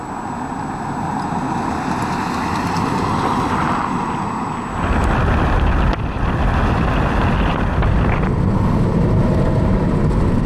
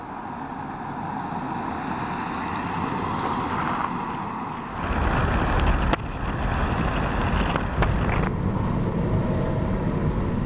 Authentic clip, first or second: second